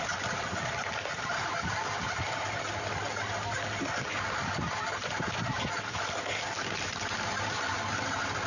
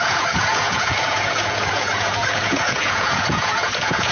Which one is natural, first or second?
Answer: first